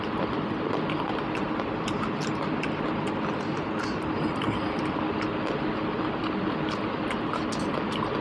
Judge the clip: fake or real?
real